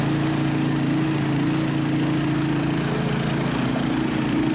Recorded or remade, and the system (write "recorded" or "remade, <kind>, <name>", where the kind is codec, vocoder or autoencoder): recorded